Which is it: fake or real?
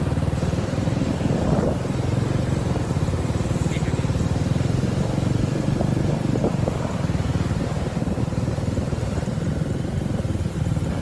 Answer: real